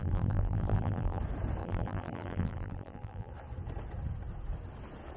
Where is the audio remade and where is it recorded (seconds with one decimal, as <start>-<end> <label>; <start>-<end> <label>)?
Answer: 0.0-1.2 remade; 1.2-1.6 recorded; 1.6-3.3 remade; 3.3-5.2 recorded